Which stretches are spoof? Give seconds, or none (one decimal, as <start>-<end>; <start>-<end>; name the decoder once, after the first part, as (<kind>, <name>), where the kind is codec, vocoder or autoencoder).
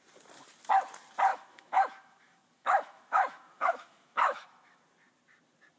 1.3-4.8 (autoencoder, DAC-VAE)